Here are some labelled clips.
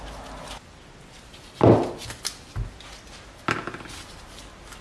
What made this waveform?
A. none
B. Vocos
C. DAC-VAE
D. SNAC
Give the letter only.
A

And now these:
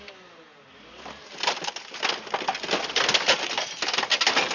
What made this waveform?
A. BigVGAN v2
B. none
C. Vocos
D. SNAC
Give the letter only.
B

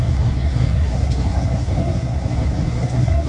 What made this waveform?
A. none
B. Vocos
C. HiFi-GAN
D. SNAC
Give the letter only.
D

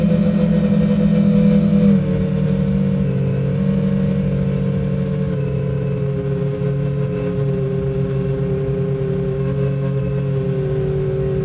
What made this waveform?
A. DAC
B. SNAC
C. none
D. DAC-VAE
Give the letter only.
C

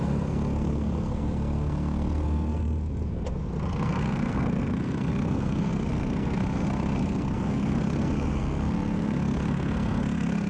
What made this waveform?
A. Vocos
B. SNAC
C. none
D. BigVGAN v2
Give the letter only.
B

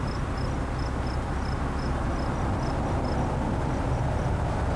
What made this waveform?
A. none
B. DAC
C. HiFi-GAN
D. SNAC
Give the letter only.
A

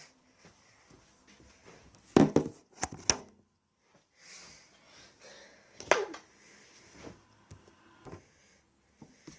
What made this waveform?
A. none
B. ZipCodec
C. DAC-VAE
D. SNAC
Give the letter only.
A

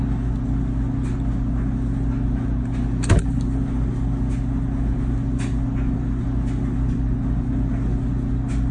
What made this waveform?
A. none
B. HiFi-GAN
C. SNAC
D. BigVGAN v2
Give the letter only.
A